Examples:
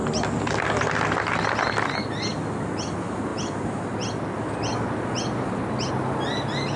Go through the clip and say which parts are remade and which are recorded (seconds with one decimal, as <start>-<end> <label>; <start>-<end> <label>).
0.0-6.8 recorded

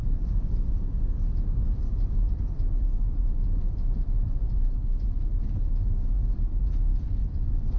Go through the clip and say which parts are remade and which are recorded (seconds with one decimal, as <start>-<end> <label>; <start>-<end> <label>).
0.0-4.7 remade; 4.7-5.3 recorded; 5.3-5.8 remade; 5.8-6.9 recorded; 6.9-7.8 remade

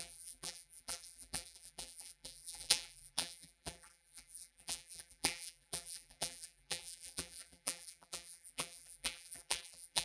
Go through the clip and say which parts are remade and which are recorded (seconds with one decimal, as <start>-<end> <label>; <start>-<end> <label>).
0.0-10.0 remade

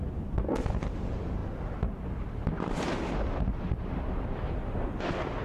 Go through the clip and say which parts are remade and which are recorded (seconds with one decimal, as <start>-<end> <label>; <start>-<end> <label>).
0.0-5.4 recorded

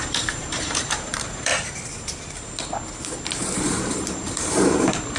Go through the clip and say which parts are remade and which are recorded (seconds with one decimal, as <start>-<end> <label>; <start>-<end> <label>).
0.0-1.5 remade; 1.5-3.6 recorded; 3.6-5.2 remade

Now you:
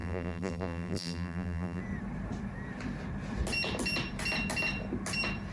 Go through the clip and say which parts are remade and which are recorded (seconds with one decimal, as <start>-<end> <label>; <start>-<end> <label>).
0.0-1.8 remade; 1.8-5.5 recorded

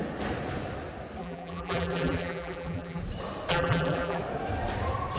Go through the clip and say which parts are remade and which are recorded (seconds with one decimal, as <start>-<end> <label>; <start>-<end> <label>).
0.0-1.2 recorded; 1.2-3.0 remade; 3.0-3.5 recorded; 3.5-4.2 remade; 4.2-5.2 recorded